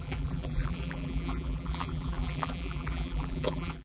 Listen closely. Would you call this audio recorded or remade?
remade